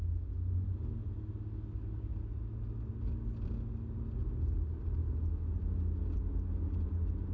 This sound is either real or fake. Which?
real